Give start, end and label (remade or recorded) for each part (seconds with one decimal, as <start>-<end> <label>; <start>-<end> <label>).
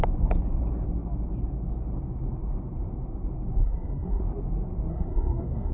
0.0-3.6 recorded; 3.6-4.2 remade; 4.2-4.9 recorded; 4.9-5.7 remade